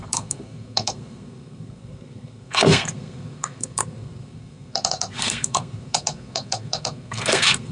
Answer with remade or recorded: remade